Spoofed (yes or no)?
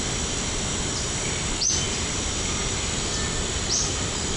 no